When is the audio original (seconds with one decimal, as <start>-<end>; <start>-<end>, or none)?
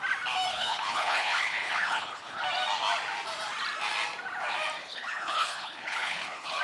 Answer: 0.0-0.5; 2.4-4.8